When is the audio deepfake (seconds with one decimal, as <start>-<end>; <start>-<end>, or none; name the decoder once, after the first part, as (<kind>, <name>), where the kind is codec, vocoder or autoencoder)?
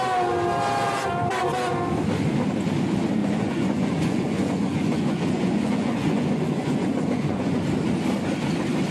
3.2-7.6 (vocoder, Vocos)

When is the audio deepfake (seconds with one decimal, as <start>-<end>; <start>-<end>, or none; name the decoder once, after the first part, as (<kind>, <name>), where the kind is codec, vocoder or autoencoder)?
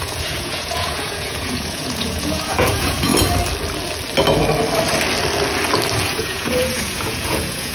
0.0-3.1 (vocoder, Vocos); 6.0-7.7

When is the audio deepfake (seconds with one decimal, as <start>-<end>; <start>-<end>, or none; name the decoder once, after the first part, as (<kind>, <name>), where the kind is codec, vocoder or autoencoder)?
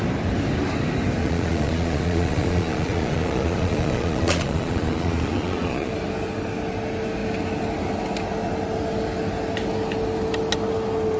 1.2-5.9 (vocoder, Vocos)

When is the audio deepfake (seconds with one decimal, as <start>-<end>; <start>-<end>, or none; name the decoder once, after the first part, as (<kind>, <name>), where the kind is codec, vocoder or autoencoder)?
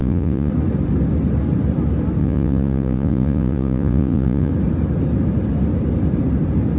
0.0-0.5 (vocoder, Vocos); 2.2-4.5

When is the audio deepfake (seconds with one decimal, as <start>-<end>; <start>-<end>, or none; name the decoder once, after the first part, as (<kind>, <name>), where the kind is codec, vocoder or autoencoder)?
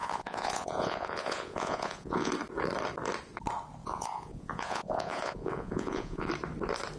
0.0-2.3 (vocoder, Vocos); 3.8-6.3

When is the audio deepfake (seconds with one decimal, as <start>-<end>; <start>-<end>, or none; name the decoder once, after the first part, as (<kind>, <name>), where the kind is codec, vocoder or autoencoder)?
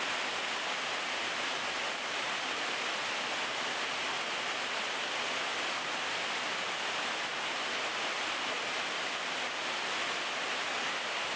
none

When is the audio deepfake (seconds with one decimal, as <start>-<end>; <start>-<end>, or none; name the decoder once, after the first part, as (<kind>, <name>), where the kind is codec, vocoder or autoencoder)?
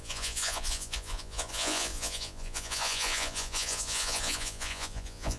0.0-5.4 (vocoder, Vocos)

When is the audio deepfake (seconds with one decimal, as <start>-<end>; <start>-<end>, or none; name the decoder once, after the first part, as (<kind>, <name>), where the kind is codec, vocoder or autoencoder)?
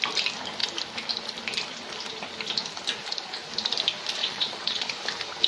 4.2-4.9 (vocoder, Vocos)